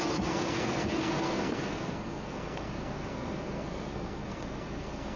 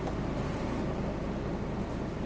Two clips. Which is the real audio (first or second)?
second